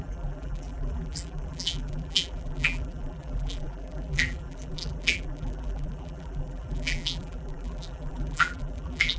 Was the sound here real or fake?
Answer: fake